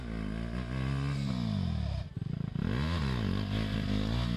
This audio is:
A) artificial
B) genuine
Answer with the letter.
B